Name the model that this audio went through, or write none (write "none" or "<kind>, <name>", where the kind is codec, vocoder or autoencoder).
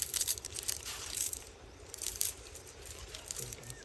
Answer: vocoder, BigVGAN v2